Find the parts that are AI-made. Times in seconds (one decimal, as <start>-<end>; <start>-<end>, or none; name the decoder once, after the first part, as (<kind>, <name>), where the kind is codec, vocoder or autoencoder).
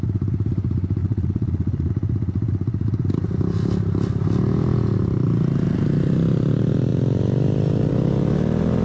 1.0-1.9 (vocoder, Vocos)